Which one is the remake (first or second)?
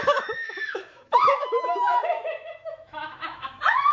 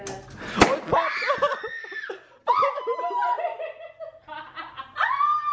first